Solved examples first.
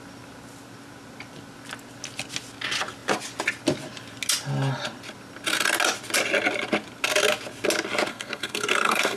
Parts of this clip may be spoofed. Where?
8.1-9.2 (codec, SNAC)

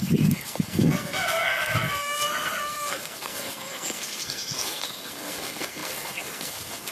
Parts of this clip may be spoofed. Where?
0.0-6.9 (codec, SNAC)

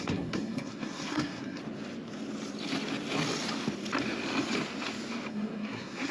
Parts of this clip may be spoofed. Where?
0.0-1.6 (codec, SNAC); 5.3-6.1

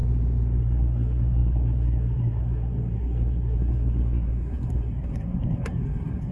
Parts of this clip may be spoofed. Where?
0.6-6.3 (codec, SNAC)